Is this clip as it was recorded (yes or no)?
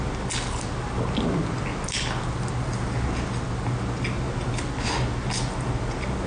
yes